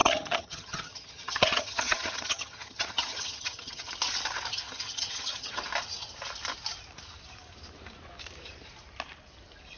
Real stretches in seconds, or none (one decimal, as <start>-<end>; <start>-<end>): 3.9-4.5; 5.6-9.8